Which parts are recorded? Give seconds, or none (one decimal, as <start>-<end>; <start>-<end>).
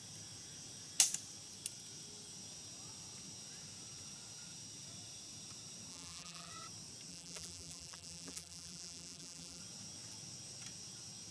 0.0-5.9; 6.5-7.1; 9.6-11.3